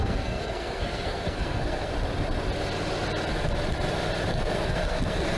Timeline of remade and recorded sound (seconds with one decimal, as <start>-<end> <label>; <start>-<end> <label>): 0.0-1.9 remade; 1.9-4.3 recorded; 4.3-5.4 remade

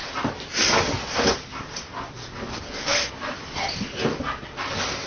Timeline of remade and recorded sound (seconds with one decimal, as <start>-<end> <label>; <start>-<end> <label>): 0.0-2.5 recorded; 2.5-3.1 remade; 3.1-5.1 recorded

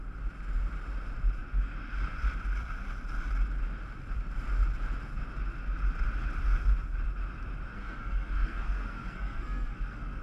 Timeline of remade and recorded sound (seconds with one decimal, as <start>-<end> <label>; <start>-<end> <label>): 0.0-7.7 recorded; 7.7-10.2 remade

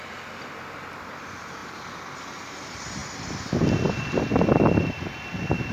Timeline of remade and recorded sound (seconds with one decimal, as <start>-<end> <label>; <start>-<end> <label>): 0.0-5.7 recorded

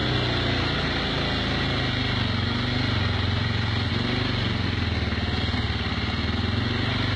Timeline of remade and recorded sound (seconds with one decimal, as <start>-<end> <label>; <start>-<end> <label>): 0.0-7.2 recorded

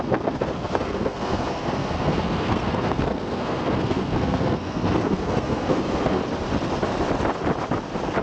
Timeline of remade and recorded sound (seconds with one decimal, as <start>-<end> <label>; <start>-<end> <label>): 0.0-6.2 remade; 6.2-8.2 recorded